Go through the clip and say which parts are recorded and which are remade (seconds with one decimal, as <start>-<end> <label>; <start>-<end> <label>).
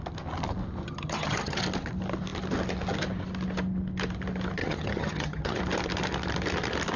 0.0-0.8 recorded; 0.8-1.6 remade; 1.6-4.6 recorded; 4.6-5.6 remade; 5.6-7.0 recorded